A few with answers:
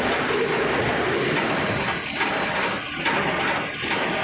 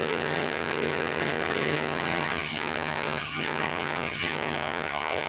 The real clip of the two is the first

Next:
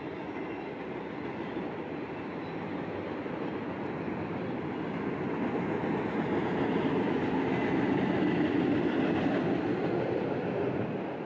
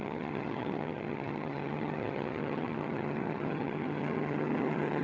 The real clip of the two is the first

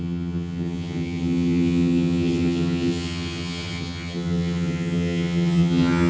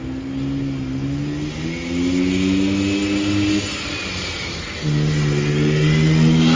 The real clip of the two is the second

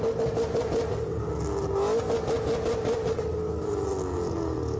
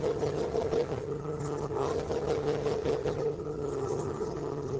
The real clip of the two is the first